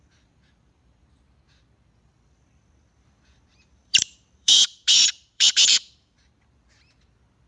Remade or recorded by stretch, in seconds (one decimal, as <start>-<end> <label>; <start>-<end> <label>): 0.0-3.5 recorded; 3.5-6.2 remade; 6.2-7.5 recorded